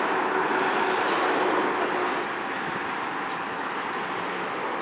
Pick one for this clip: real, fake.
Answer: real